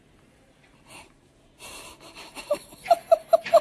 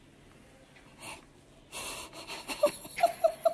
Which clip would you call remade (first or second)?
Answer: first